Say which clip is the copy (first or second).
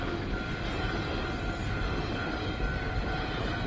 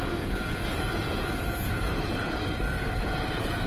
second